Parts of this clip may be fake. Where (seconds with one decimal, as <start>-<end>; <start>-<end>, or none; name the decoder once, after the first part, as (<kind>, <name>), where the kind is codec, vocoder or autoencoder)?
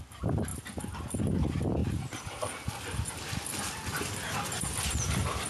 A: 1.8-2.4 (vocoder, BigVGAN v2)